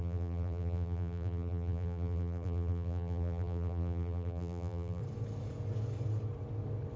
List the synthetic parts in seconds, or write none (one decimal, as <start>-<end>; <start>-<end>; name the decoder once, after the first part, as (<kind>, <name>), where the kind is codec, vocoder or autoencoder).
0.0-5.0 (vocoder, BigVGAN v2)